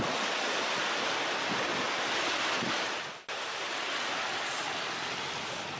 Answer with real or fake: real